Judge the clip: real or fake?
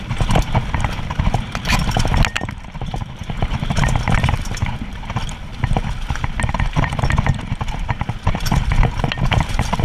real